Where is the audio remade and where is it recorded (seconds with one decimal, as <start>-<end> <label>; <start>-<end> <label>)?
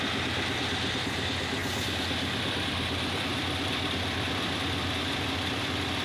0.0-6.0 recorded